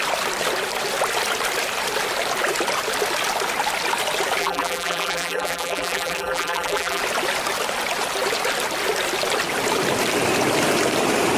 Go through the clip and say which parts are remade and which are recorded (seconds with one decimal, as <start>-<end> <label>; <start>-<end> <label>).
0.0-4.4 recorded; 4.4-7.0 remade; 7.0-11.4 recorded